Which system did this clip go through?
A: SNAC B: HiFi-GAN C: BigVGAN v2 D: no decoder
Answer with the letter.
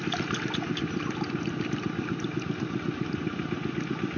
D